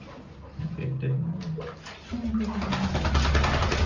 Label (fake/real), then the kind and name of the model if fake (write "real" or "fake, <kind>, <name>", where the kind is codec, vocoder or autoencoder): real